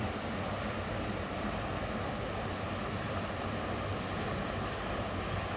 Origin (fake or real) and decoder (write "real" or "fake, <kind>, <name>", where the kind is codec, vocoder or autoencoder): real